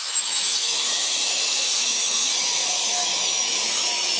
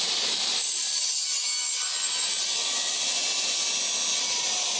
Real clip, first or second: second